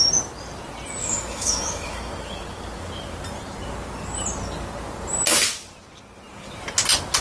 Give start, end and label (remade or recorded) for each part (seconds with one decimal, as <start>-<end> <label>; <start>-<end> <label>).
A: 0.0-1.0 recorded; 1.0-2.0 remade; 2.0-7.2 recorded